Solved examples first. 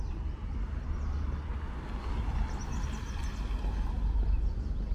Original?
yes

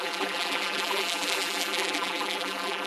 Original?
no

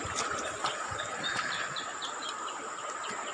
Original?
yes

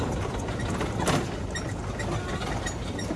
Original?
yes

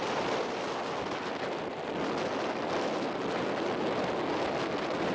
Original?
yes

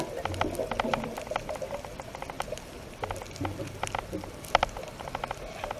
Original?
yes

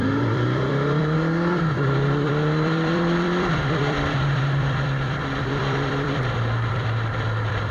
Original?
no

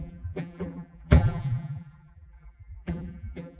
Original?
no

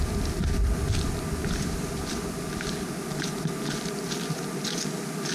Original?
yes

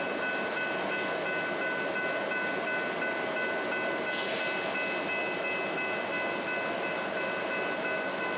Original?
yes